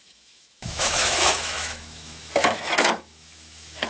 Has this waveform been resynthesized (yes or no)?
yes